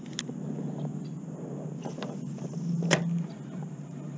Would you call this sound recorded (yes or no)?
yes